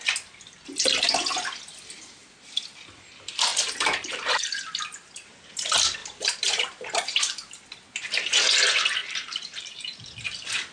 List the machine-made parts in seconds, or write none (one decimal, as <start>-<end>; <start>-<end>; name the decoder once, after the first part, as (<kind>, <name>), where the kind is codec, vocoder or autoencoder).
3.5-4.6 (vocoder, BigVGAN v2); 6.0-7.5; 9.0-10.1